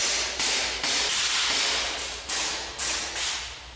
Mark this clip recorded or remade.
recorded